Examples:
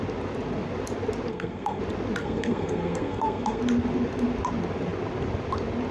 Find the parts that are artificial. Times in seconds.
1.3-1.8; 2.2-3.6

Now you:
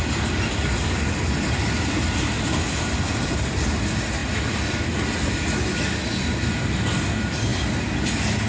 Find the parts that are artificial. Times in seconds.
none

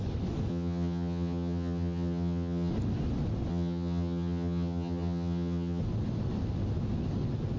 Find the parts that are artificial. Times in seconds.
0.5-2.7; 3.5-5.8

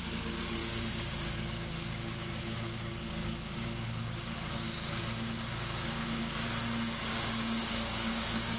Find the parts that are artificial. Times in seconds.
0.6-5.0; 7.1-8.6

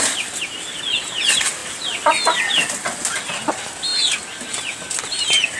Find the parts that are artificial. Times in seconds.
none

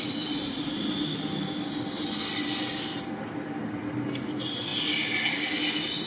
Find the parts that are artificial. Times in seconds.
none

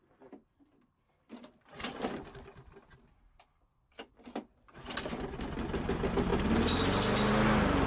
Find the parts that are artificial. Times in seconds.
none

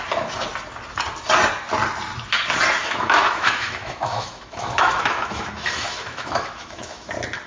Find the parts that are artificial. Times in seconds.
2.8-7.1